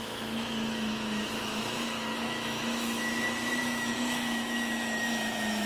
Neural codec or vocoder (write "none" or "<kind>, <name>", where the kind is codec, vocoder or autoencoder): autoencoder, DAC-VAE